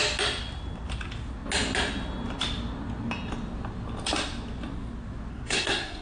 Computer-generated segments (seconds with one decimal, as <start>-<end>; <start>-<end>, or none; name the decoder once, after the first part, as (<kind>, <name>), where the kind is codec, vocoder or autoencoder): 5.3-6.0 (codec, SNAC)